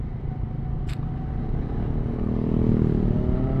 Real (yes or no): yes